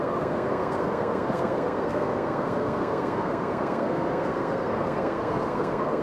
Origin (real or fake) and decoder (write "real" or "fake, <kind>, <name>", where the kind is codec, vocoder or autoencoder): fake, codec, SNAC